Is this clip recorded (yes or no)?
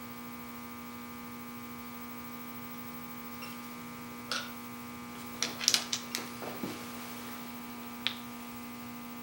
yes